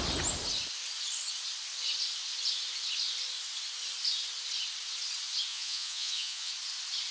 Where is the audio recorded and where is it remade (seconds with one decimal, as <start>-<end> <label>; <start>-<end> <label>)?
0.0-5.5 recorded; 5.5-6.5 remade; 6.5-7.1 recorded